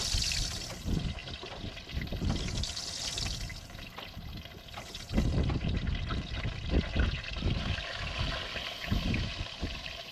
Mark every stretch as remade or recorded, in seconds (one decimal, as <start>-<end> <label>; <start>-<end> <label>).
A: 0.0-3.5 remade; 3.5-8.7 recorded; 8.7-10.1 remade